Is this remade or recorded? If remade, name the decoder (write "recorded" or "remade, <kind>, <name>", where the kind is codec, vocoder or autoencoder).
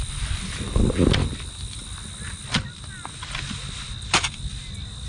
recorded